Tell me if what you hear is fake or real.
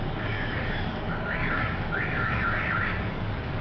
fake